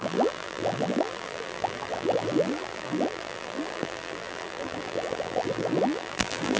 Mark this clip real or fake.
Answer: fake